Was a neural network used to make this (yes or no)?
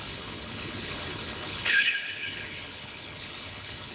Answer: yes